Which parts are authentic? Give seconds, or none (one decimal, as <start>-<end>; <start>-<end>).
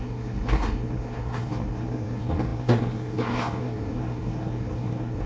none